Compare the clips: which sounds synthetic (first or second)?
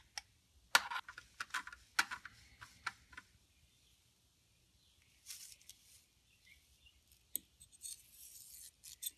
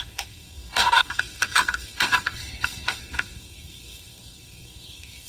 second